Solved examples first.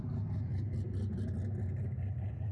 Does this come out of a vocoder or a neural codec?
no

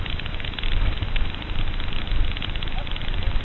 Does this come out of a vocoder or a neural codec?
no